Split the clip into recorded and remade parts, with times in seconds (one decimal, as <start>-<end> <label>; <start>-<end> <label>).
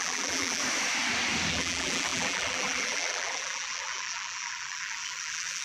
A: 0.0-0.6 remade; 0.6-1.5 recorded; 1.5-5.6 remade